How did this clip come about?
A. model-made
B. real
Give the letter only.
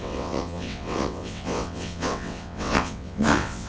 A